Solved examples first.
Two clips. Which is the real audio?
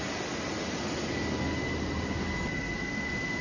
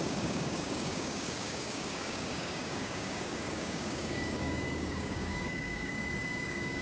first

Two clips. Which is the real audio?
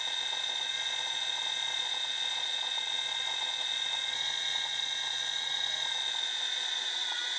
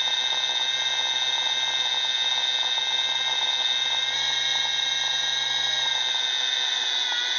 second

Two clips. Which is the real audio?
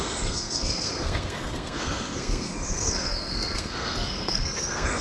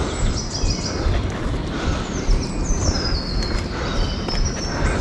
second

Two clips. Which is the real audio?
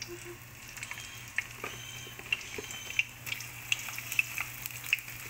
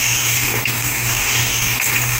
first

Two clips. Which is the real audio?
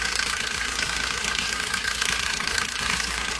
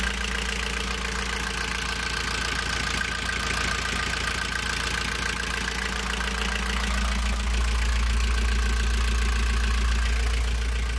second